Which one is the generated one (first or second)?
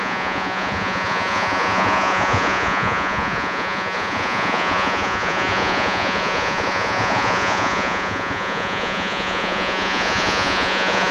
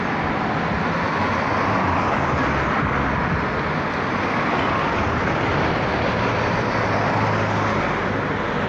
first